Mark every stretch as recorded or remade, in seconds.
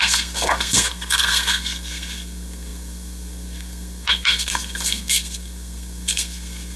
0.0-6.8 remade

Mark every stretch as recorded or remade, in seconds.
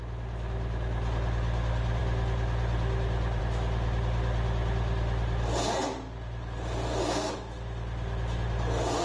0.0-9.0 recorded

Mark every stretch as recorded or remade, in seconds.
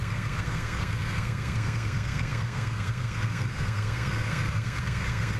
0.0-5.4 remade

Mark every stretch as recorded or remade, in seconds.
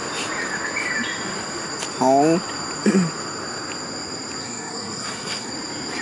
0.0-4.4 recorded; 4.4-5.5 remade; 5.5-6.0 recorded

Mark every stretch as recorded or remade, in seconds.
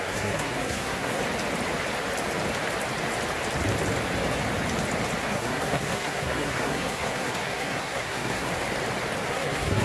0.0-1.2 remade; 1.2-5.2 recorded; 5.2-8.5 remade; 8.5-9.3 recorded; 9.3-9.8 remade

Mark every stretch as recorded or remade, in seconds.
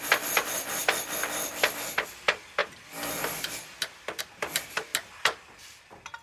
0.0-6.2 recorded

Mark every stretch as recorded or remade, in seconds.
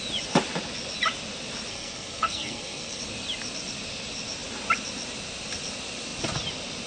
0.0-1.7 recorded; 1.7-3.0 remade; 3.0-6.9 recorded